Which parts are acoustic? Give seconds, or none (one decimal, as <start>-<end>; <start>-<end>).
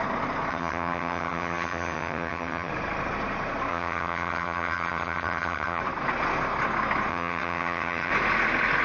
0.0-0.5; 2.7-3.7; 5.8-7.1; 8.1-8.8